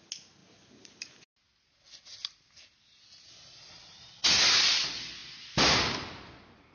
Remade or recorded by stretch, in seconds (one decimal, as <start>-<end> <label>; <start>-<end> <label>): 0.0-6.7 recorded